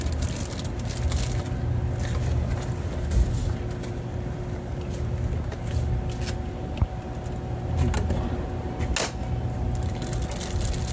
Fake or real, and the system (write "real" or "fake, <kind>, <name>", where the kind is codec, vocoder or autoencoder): real